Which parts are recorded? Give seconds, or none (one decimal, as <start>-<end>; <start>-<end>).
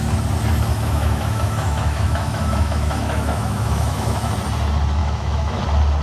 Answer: 0.0-0.7; 4.3-5.0; 5.6-6.0